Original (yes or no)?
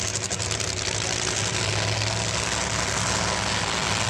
yes